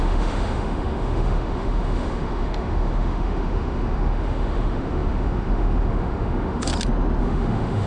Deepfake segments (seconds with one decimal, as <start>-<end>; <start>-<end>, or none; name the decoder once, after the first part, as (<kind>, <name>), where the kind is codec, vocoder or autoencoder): 0.0-6.7 (autoencoder, DAC-VAE); 7.2-7.9